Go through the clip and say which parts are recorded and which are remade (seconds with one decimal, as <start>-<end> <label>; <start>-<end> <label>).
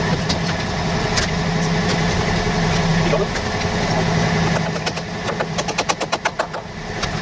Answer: 0.0-7.2 recorded